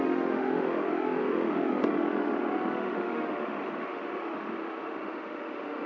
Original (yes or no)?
no